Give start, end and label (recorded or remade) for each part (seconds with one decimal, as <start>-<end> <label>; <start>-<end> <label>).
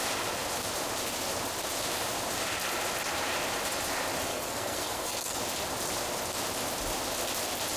0.0-4.3 recorded; 4.3-5.4 remade; 5.4-7.8 recorded